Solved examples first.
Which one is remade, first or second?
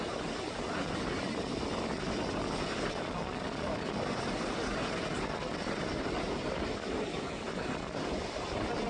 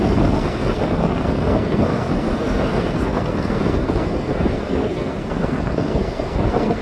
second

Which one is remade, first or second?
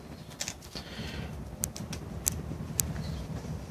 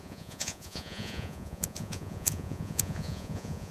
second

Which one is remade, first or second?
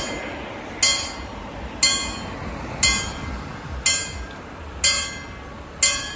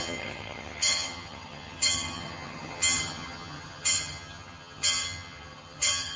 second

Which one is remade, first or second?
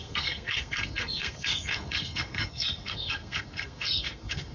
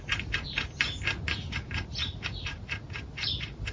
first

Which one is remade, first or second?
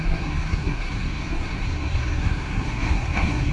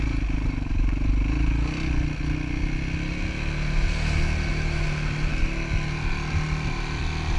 first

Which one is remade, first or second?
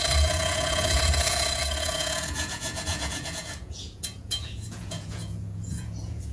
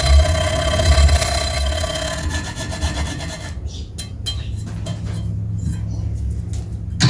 first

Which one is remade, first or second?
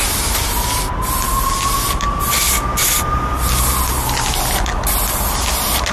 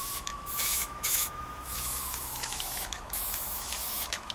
second